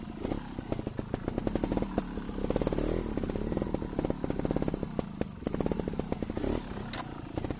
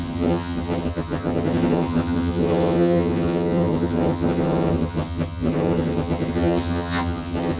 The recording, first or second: first